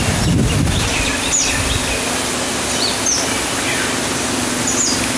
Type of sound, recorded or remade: recorded